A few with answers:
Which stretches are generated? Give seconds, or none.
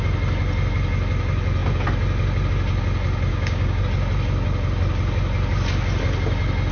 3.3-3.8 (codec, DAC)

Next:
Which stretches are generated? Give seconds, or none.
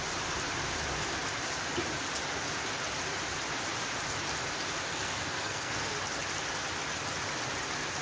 4.9-5.9 (codec, SNAC)